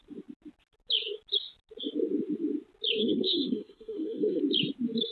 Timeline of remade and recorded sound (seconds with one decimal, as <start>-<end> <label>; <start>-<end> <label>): 0.0-3.0 recorded; 3.0-4.4 remade; 4.4-5.1 recorded